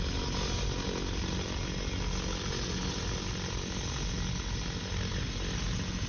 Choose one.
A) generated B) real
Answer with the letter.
B